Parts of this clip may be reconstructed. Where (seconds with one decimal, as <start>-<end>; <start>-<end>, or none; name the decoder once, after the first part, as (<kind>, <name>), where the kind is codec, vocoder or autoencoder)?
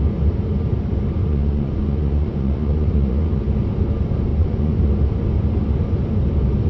1.2-3.4 (vocoder, Vocos); 4.3-4.9